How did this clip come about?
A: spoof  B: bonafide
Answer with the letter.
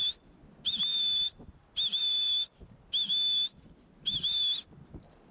B